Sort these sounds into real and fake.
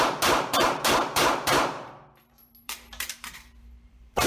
fake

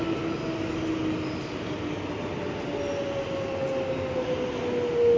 real